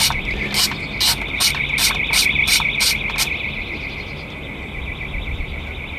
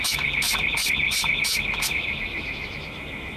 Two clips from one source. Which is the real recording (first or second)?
first